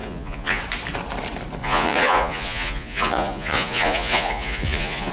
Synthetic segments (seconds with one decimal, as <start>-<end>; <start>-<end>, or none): 0.0-0.6; 1.6-5.1